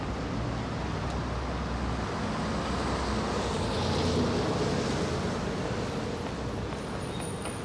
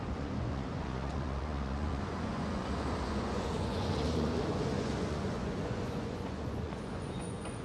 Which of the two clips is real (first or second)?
first